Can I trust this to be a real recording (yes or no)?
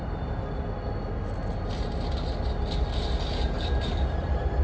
yes